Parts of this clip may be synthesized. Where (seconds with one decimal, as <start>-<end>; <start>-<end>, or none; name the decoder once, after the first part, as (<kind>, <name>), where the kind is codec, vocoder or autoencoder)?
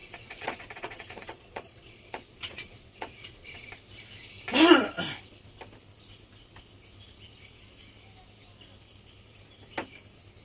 0.0-3.7 (vocoder, Vocos)